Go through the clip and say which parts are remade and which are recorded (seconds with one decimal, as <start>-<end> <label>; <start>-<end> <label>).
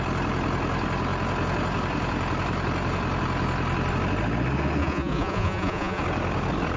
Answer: 0.0-4.8 recorded; 4.8-6.0 remade; 6.0-6.8 recorded